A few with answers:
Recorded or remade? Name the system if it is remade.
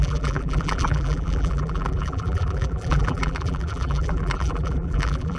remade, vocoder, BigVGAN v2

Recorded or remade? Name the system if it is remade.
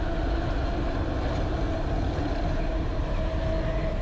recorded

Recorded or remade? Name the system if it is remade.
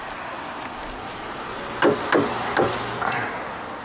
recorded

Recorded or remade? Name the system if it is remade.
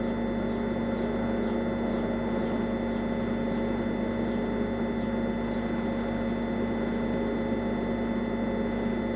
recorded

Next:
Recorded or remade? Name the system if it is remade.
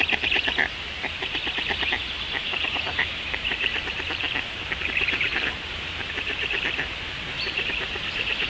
remade, vocoder, BigVGAN v2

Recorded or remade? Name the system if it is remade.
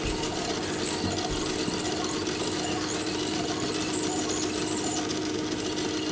recorded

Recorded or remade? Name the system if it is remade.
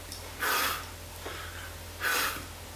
recorded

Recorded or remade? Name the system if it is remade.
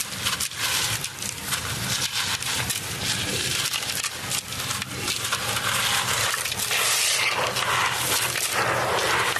recorded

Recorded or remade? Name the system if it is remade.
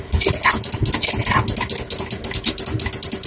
recorded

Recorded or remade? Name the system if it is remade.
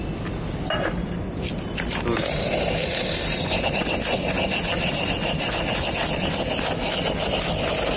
recorded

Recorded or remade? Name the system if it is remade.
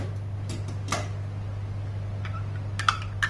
recorded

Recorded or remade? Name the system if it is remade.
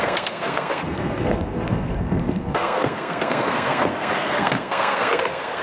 remade, codec, SNAC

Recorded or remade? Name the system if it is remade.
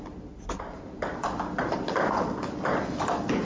recorded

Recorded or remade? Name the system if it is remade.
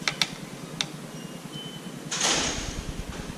recorded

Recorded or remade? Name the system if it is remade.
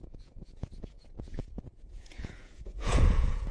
remade, vocoder, Vocos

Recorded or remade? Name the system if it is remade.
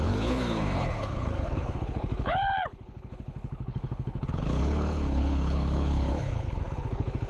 remade, codec, HILCodec